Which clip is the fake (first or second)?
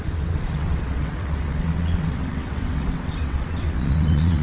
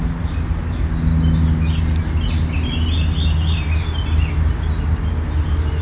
first